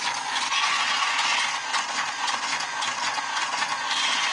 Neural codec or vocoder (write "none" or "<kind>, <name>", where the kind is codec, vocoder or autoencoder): vocoder, Vocos